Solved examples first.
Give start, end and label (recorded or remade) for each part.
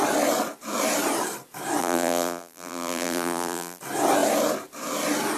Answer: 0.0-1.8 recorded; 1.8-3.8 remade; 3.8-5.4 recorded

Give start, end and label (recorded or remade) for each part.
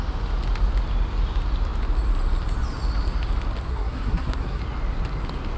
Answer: 0.0-3.7 recorded; 3.7-4.6 remade; 4.6-5.6 recorded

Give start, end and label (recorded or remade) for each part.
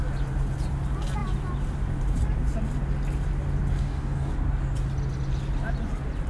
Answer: 0.0-3.8 recorded; 3.8-4.3 remade; 4.3-6.3 recorded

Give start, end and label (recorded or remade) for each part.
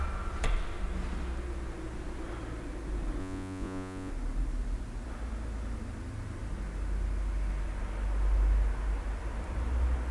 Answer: 0.0-3.2 recorded; 3.2-4.1 remade; 4.1-10.1 recorded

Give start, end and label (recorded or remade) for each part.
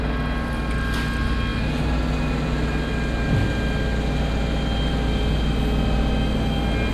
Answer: 0.0-6.9 recorded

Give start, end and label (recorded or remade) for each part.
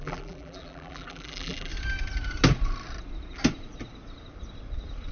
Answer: 0.0-1.7 remade; 1.7-5.1 recorded